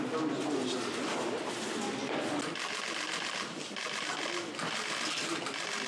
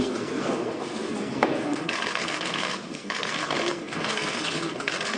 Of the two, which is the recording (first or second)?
first